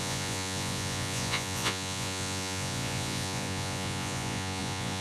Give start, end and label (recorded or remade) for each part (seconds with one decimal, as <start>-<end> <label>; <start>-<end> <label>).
0.0-5.0 remade